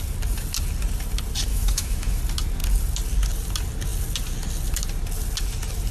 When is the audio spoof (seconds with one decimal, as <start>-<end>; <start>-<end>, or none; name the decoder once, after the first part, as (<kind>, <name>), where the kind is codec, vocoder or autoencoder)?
1.5-2.2 (autoencoder, DAC-VAE)